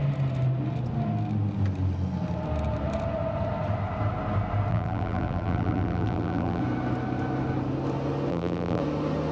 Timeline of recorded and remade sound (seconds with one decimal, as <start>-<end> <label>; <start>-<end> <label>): 0.0-4.7 recorded; 4.7-6.6 remade; 6.6-8.3 recorded; 8.3-8.8 remade; 8.8-9.3 recorded